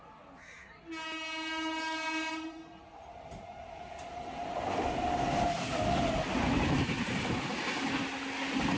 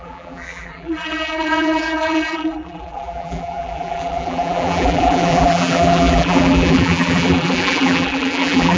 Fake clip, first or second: second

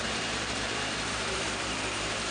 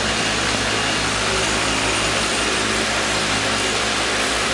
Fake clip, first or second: first